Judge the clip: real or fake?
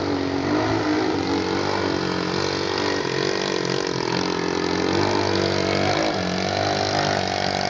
real